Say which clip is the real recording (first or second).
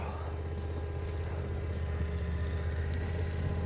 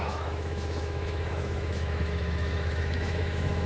first